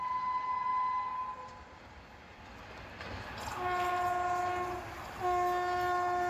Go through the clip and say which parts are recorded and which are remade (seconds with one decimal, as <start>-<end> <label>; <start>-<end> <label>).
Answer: 0.0-1.1 recorded; 1.1-2.4 remade; 2.4-6.3 recorded